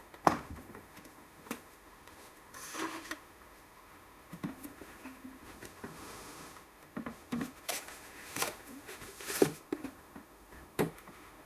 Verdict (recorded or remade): remade